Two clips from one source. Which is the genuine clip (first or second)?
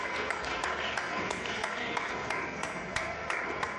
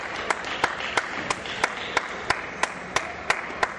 second